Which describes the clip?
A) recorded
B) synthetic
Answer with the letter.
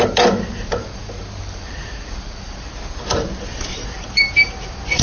B